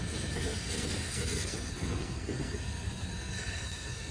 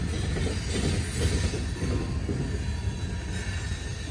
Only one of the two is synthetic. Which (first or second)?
first